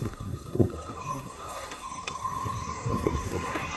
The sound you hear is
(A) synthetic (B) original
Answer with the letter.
A